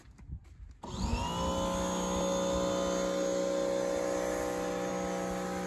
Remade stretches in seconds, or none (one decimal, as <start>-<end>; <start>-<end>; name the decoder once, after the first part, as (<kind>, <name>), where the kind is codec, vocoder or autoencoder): none